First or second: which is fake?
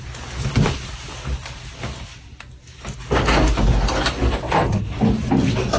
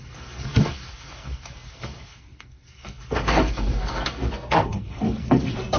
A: second